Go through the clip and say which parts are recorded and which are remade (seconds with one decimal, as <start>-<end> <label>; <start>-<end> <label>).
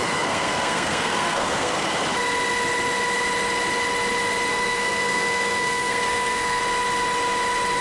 0.0-1.9 remade; 1.9-4.5 recorded; 4.5-6.6 remade; 6.6-7.8 recorded